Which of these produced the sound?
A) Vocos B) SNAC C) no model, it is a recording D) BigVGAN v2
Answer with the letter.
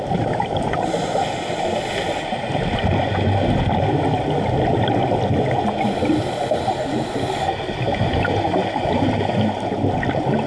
C